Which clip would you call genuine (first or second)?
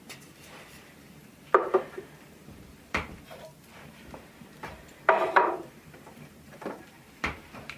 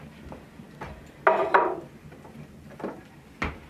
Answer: second